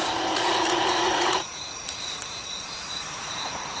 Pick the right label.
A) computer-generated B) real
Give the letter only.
A